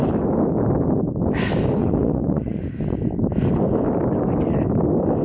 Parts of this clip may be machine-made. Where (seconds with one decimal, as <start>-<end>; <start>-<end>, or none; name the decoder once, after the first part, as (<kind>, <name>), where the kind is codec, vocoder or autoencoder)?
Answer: 1.8-2.6 (vocoder, Vocos)